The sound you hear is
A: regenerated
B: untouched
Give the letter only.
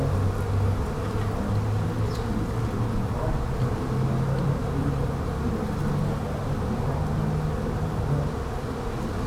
B